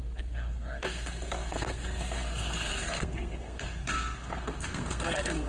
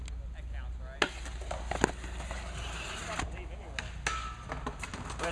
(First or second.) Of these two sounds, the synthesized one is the first